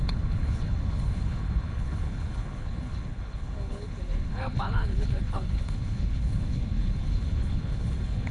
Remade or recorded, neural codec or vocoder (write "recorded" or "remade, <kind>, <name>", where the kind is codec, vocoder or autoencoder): remade, codec, HILCodec